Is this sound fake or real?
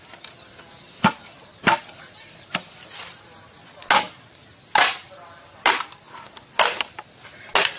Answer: real